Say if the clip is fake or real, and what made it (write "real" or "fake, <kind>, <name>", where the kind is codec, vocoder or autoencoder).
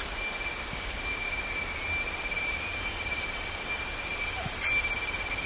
fake, vocoder, BigVGAN v2